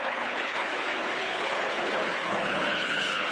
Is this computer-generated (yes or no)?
yes